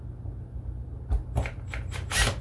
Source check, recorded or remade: recorded